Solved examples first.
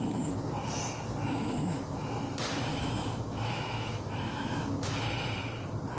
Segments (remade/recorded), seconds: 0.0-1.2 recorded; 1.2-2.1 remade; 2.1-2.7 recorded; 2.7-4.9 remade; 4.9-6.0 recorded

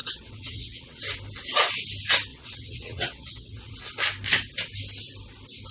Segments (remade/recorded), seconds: 0.0-1.0 remade; 1.0-2.3 recorded; 2.3-3.7 remade; 3.7-5.7 recorded

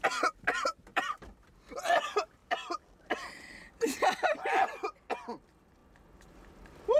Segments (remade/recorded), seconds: 0.0-0.9 recorded; 0.9-1.9 remade; 1.9-2.4 recorded; 2.4-3.6 remade; 3.6-7.0 recorded

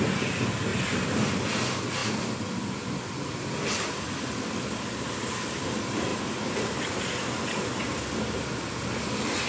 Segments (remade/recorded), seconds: 0.0-6.1 recorded; 6.1-7.4 remade; 7.4-9.5 recorded

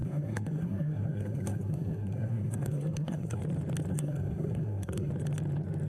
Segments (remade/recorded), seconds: 0.0-3.4 remade; 3.4-3.9 recorded; 3.9-5.1 remade; 5.1-5.9 recorded

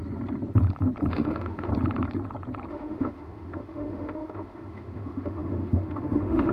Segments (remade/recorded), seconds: 0.0-1.1 recorded; 1.1-1.7 remade; 1.7-2.7 recorded; 2.7-6.5 remade

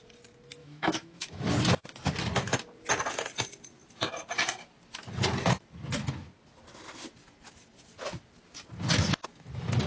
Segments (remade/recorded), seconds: 0.0-0.6 recorded; 0.6-1.4 remade; 1.4-9.9 recorded